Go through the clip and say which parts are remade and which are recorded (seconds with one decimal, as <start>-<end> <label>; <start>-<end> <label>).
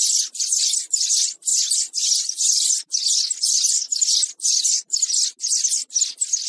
0.0-6.5 recorded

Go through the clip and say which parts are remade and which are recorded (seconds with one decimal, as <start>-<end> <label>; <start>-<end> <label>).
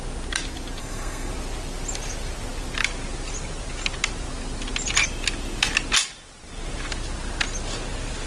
0.0-0.8 recorded; 0.8-1.3 remade; 1.3-8.3 recorded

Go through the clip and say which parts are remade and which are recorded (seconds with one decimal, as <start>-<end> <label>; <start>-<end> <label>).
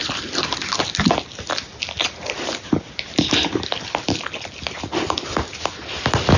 0.0-6.4 recorded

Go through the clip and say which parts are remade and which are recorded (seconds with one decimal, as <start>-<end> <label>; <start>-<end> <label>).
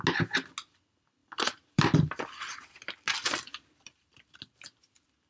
0.0-1.2 recorded; 1.2-4.4 remade; 4.4-5.3 recorded